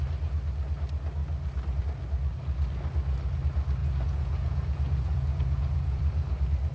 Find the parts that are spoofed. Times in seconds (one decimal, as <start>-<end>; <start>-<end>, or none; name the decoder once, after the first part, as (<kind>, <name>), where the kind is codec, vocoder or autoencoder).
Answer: 3.8-6.0 (vocoder, Vocos)